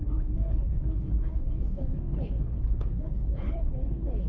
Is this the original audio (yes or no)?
no